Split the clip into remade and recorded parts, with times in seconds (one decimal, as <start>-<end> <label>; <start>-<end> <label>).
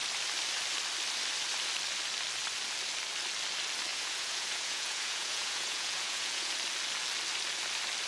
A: 0.0-3.9 recorded; 3.9-6.5 remade; 6.5-8.1 recorded